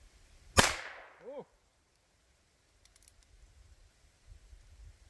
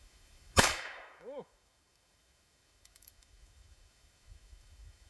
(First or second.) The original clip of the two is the first